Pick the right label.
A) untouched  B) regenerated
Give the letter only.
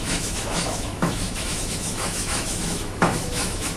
B